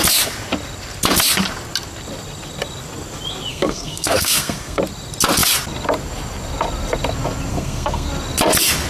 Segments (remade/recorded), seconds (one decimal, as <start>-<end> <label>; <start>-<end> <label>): 0.0-3.5 recorded; 3.5-4.8 remade; 4.8-7.5 recorded; 7.5-8.1 remade; 8.1-8.9 recorded

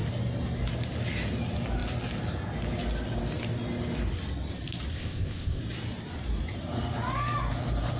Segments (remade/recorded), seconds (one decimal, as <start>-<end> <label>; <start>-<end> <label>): 0.0-4.9 recorded; 4.9-5.6 remade; 5.6-8.0 recorded

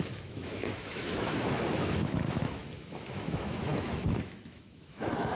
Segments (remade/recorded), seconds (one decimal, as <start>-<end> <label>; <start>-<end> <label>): 0.0-5.3 remade

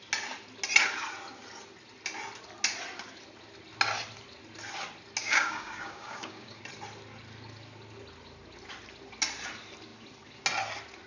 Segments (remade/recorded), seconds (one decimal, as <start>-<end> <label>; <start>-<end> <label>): 0.0-5.2 recorded; 5.2-6.6 remade; 6.6-11.1 recorded

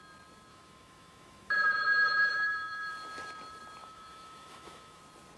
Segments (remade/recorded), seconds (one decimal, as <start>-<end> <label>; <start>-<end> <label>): 0.0-0.5 recorded; 0.5-2.9 remade; 2.9-3.8 recorded; 3.8-5.0 remade; 5.0-5.4 recorded

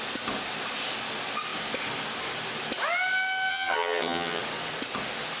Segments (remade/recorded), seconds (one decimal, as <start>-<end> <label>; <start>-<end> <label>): 0.0-3.5 recorded; 3.5-4.4 remade; 4.4-5.4 recorded